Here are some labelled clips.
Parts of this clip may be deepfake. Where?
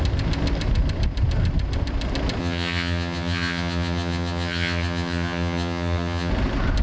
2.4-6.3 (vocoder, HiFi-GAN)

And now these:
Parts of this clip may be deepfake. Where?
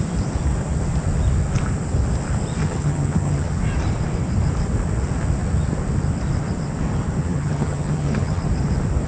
2.6-3.6 (vocoder, HiFi-GAN); 7.2-8.4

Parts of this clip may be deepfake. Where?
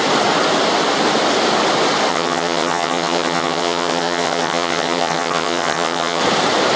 2.1-6.2 (vocoder, HiFi-GAN)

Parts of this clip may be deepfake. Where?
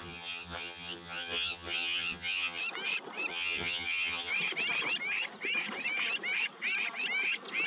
0.0-2.6 (vocoder, HiFi-GAN); 3.3-4.3